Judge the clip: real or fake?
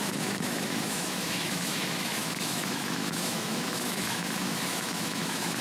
fake